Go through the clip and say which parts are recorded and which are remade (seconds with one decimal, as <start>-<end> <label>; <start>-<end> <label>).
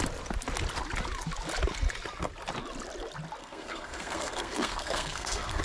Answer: 0.0-3.4 recorded; 3.4-5.6 remade